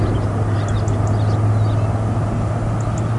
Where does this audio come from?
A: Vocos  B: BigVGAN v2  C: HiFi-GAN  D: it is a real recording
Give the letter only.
D